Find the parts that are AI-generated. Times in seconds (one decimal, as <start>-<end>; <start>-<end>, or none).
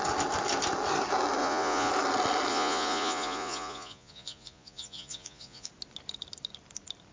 1.4-1.9; 2.5-5.7